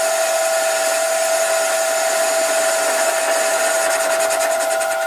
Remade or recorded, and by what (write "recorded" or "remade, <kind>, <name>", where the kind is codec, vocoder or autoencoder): recorded